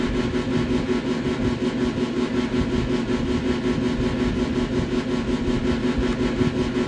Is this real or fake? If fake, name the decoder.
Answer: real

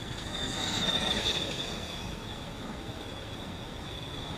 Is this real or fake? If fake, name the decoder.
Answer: fake, codec, SNAC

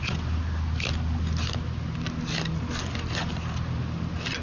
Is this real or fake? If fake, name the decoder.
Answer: real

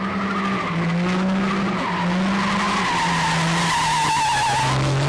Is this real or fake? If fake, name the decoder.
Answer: real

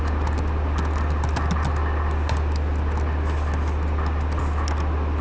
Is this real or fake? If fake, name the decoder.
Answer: real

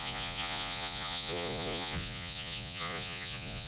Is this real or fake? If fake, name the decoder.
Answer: fake, vocoder, Vocos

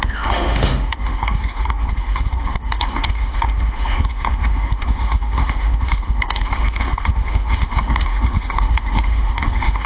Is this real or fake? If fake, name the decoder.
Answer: fake, autoencoder, DAC-VAE